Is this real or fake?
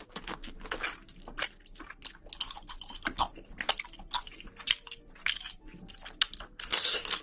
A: real